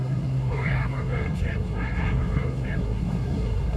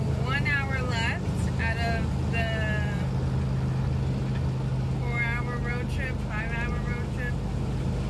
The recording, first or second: second